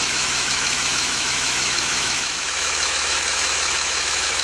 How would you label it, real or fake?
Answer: fake